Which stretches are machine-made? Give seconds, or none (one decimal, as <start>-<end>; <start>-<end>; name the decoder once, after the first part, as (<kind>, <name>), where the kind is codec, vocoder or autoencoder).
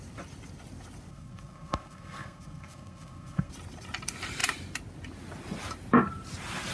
1.1-3.5 (codec, SNAC)